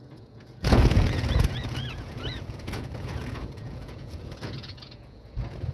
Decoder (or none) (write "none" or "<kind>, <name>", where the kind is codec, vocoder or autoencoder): vocoder, Vocos